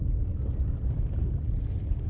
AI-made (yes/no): yes